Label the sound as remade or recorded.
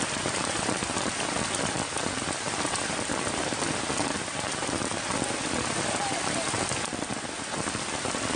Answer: recorded